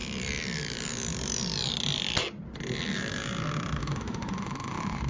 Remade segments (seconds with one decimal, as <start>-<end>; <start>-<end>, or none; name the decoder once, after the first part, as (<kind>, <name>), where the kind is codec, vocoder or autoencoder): 3.8-5.1 (autoencoder, DAC-VAE)